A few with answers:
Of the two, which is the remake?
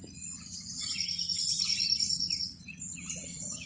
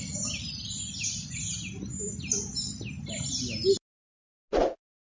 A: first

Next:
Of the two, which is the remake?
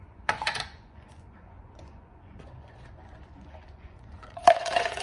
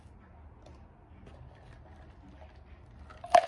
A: first